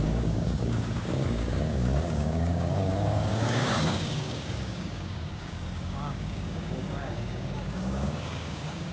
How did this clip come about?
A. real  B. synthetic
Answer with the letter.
B